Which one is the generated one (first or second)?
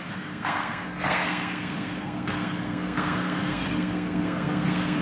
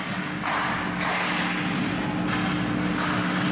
first